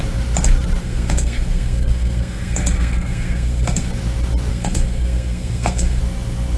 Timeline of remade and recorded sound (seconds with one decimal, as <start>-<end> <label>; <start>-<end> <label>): 0.0-0.8 recorded; 0.8-3.9 remade; 3.9-4.5 recorded; 4.5-6.0 remade; 6.0-6.6 recorded